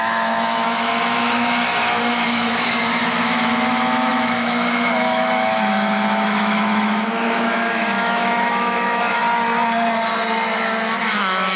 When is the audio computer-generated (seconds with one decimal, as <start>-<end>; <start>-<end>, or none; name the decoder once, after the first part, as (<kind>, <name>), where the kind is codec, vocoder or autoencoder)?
0.0-9.2 (autoencoder, DAC-VAE); 11.0-11.6